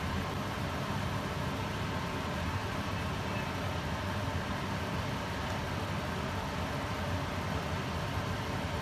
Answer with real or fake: real